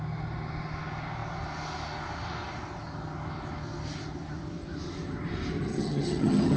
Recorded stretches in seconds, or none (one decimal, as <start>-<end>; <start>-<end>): 0.0-5.7